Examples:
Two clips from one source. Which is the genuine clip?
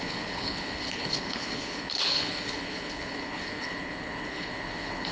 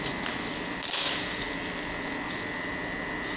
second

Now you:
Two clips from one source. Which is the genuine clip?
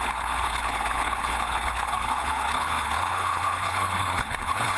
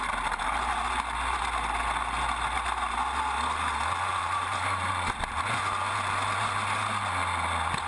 second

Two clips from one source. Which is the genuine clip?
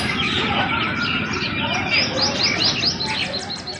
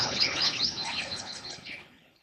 first